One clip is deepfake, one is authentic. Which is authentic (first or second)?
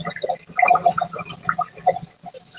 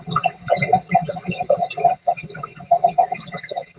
first